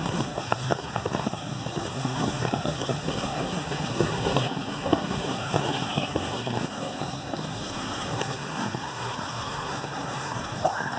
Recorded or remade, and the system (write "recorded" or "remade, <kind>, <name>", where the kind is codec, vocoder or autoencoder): remade, codec, SNAC